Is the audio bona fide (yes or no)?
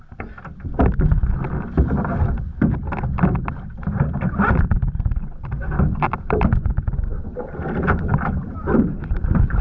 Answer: yes